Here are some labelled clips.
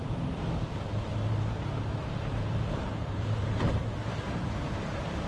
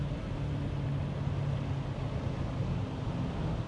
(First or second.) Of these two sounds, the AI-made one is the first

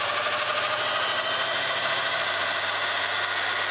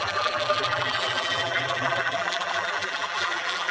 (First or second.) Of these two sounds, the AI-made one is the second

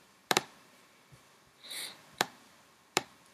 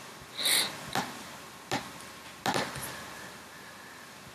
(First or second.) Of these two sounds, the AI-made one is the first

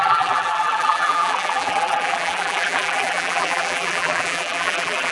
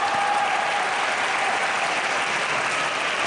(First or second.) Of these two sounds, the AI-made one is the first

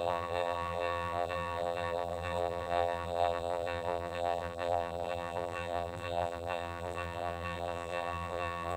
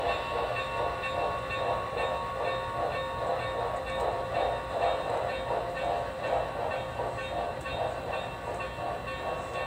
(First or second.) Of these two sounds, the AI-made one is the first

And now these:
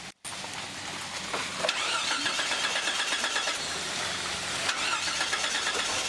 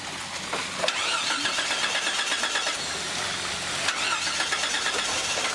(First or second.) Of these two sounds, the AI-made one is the first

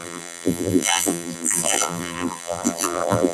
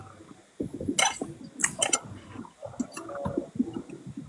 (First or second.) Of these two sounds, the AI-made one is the first